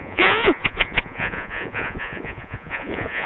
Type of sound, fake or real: fake